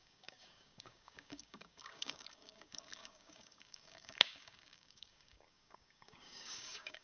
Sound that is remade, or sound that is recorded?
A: remade